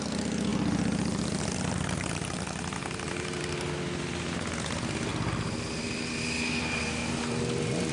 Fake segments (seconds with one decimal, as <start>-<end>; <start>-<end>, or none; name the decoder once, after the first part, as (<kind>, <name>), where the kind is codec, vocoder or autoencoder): 2.8-3.4 (vocoder, BigVGAN v2)